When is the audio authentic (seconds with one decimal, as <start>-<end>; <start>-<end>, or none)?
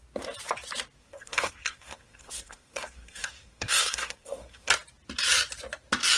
0.0-1.0; 4.7-6.2